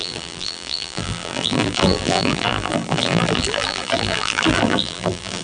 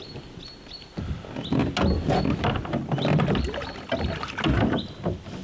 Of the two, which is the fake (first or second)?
first